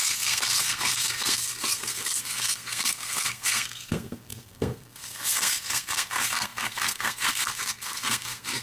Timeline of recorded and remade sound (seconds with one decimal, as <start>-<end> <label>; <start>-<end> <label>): 0.0-8.6 remade